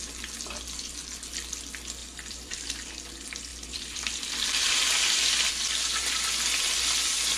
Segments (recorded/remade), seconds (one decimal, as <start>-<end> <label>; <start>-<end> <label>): 0.0-2.0 recorded; 2.0-2.7 remade; 2.7-3.5 recorded; 3.5-5.5 remade; 5.5-7.4 recorded

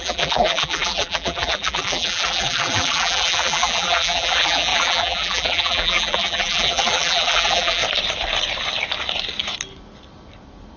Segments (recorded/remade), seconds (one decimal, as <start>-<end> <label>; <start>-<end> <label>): 0.0-7.8 remade; 7.8-10.8 recorded

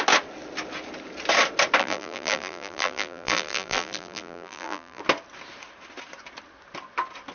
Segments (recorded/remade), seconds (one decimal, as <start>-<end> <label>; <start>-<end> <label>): 0.0-1.8 recorded; 1.8-5.0 remade; 5.0-7.3 recorded

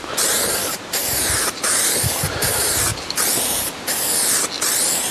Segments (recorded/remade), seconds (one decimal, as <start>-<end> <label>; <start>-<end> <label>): 0.0-2.9 remade; 2.9-5.1 recorded

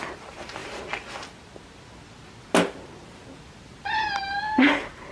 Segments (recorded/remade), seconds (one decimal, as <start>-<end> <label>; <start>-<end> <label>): 0.0-5.1 recorded

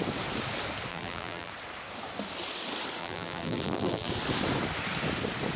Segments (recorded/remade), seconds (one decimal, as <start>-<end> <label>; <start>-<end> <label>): 0.0-0.9 recorded; 0.9-1.5 remade; 1.5-3.0 recorded; 3.0-4.1 remade; 4.1-5.6 recorded